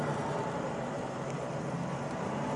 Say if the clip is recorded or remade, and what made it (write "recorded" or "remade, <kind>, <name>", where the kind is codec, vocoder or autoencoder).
recorded